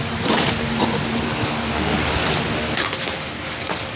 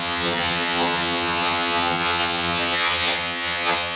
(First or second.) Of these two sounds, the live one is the first